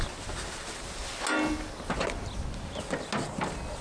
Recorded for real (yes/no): yes